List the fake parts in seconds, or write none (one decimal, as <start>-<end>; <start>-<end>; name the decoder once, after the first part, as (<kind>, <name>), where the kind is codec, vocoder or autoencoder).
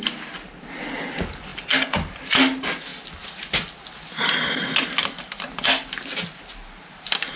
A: none